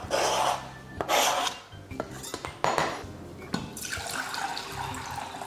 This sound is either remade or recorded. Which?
recorded